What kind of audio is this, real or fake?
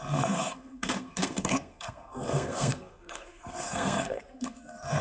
fake